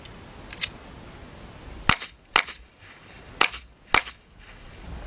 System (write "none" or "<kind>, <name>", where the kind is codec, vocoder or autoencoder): none